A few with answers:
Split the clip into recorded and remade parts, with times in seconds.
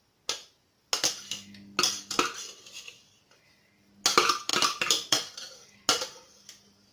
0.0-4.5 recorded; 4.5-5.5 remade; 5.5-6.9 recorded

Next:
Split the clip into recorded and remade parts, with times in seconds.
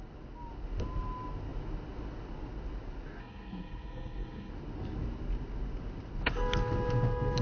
0.0-3.2 recorded; 3.2-4.5 remade; 4.5-7.4 recorded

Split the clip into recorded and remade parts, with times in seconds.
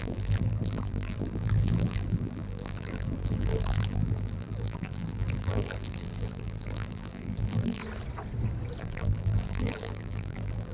0.0-7.8 remade; 7.8-8.8 recorded; 8.8-10.7 remade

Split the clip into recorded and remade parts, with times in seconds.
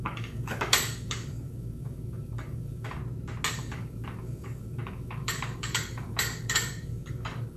0.0-3.0 remade; 3.0-3.5 recorded; 3.5-7.6 remade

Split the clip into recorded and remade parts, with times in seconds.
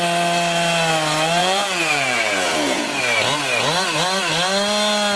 0.0-1.4 recorded; 1.4-3.0 remade; 3.0-5.2 recorded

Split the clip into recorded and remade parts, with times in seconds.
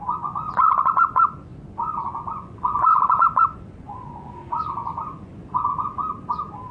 0.0-6.0 remade; 6.0-6.7 recorded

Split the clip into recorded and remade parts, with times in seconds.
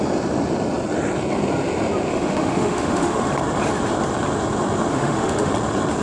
0.0-2.1 recorded; 2.1-3.3 remade; 3.3-4.9 recorded; 4.9-5.5 remade; 5.5-6.0 recorded